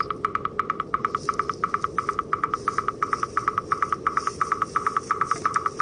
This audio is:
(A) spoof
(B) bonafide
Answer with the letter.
B